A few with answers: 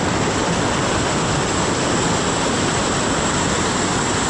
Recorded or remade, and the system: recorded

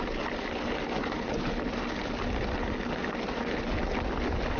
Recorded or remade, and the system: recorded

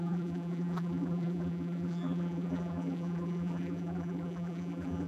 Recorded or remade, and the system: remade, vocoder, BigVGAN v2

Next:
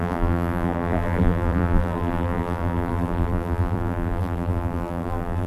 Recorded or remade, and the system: remade, vocoder, BigVGAN v2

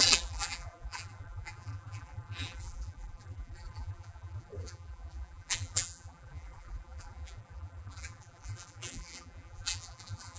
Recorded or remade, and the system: remade, vocoder, BigVGAN v2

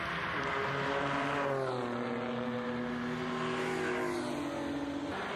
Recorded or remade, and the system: recorded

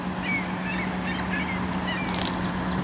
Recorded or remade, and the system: recorded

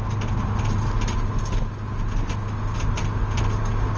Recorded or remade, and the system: recorded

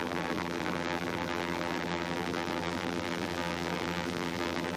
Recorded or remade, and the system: remade, vocoder, BigVGAN v2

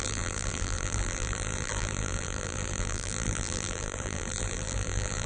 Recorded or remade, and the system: remade, vocoder, BigVGAN v2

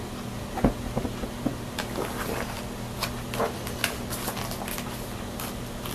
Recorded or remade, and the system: recorded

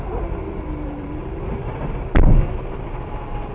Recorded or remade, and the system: remade, vocoder, BigVGAN v2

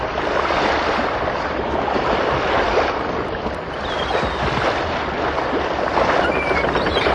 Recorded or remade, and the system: remade, vocoder, BigVGAN v2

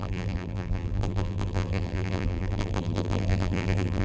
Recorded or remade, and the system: remade, vocoder, BigVGAN v2